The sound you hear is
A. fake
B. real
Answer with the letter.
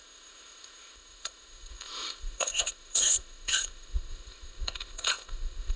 A